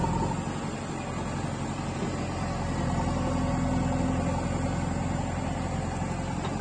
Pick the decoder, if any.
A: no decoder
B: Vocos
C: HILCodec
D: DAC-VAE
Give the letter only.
A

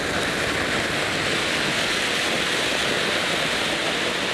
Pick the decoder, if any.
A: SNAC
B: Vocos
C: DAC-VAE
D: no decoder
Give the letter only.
D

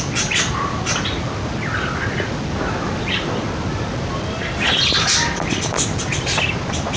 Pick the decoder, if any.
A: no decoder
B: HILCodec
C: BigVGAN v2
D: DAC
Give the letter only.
A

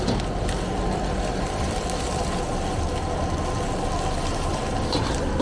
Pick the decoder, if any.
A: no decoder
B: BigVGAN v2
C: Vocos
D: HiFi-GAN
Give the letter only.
A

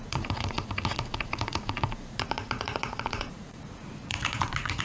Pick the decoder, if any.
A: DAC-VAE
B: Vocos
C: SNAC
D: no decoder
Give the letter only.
B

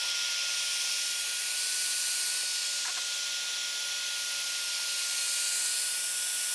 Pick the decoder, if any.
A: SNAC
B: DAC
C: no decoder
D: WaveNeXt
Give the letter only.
C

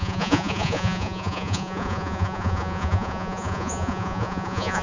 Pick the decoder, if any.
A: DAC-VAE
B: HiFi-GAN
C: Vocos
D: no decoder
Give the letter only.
C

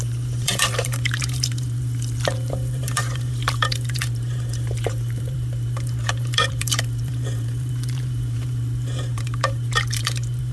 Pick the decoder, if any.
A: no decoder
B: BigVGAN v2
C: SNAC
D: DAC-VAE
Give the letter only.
B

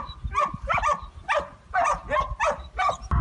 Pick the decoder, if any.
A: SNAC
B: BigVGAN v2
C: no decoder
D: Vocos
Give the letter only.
C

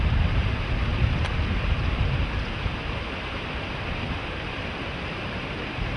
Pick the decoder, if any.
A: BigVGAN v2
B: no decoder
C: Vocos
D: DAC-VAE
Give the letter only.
B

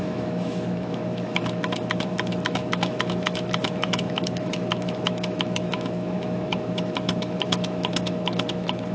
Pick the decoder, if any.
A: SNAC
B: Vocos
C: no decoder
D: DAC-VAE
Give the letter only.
D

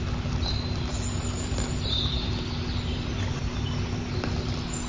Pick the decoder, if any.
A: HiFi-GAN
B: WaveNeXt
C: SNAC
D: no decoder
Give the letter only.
D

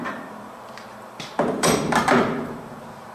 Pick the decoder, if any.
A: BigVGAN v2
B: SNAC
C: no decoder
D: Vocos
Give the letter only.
A